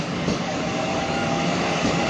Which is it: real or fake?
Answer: fake